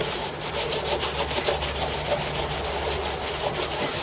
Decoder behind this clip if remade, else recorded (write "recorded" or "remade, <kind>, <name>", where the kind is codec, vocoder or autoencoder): recorded